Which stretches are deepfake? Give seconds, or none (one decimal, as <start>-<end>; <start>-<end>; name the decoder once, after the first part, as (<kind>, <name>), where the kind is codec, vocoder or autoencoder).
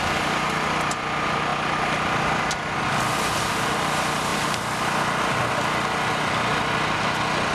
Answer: 1.5-2.4 (vocoder, BigVGAN v2)